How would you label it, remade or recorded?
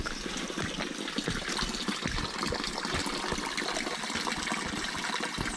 recorded